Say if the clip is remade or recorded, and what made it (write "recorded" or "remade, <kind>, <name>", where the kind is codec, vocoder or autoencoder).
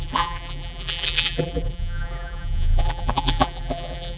remade, vocoder, BigVGAN v2